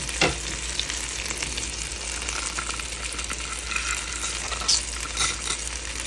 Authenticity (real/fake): real